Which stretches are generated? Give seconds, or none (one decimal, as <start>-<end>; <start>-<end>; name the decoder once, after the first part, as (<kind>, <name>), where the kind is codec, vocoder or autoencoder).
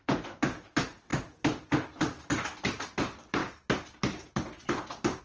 0.0-1.1 (vocoder, BigVGAN v2); 1.7-3.4